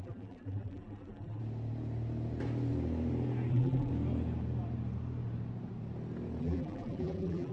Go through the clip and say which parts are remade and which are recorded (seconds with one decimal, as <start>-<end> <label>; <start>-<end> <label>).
0.0-1.4 remade; 1.4-3.5 recorded; 3.5-3.9 remade; 3.9-6.4 recorded; 6.4-7.5 remade